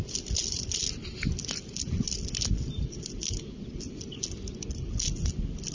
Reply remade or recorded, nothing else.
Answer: recorded